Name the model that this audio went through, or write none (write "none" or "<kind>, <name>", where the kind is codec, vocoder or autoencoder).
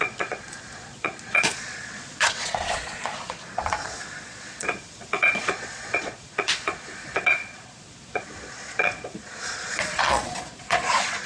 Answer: vocoder, Vocos